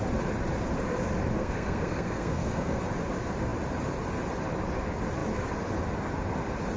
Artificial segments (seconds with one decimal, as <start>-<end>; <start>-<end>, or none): 1.4-2.8